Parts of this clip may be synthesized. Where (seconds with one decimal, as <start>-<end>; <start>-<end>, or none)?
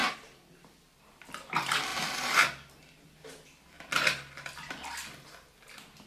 none